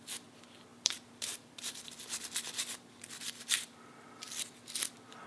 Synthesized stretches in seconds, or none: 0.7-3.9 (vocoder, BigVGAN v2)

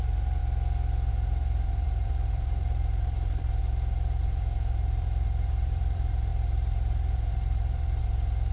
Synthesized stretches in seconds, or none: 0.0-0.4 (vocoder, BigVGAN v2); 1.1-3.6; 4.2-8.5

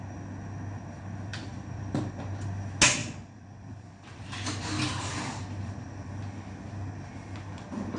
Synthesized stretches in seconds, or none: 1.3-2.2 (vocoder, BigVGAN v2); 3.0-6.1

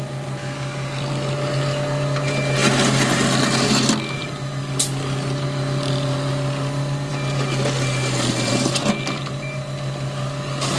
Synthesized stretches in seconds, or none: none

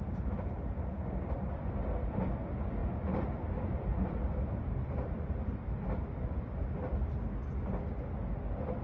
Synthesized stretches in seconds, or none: 2.8-7.2 (vocoder, BigVGAN v2)